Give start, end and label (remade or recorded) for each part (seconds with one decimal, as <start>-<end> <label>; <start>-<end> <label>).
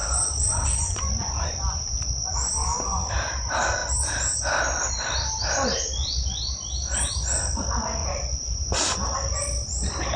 0.0-3.1 remade; 3.1-8.0 recorded; 8.0-8.6 remade; 8.6-10.2 recorded